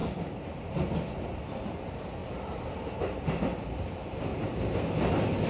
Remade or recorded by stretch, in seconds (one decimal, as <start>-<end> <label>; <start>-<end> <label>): 0.0-5.5 recorded